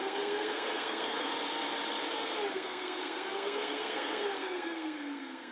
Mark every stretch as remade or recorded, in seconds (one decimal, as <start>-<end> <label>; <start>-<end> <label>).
0.0-1.3 remade; 1.3-2.5 recorded; 2.5-5.5 remade